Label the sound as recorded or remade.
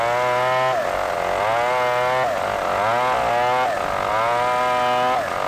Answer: recorded